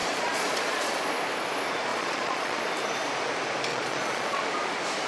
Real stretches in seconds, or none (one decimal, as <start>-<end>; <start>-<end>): 0.9-1.9; 2.6-3.7; 4.4-5.1